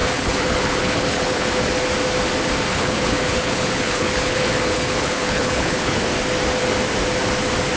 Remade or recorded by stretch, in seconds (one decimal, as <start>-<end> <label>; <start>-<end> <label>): 0.0-1.5 remade; 1.5-2.7 recorded; 2.7-6.0 remade; 6.0-7.8 recorded